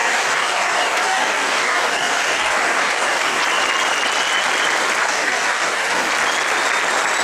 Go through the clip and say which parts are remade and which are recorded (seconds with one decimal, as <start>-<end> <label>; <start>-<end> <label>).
0.0-3.4 remade; 3.4-5.0 recorded; 5.0-6.1 remade; 6.1-7.2 recorded